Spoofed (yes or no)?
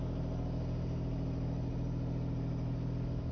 no